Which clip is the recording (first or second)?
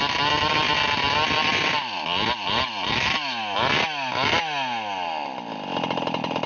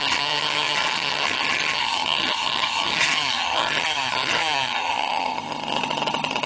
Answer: first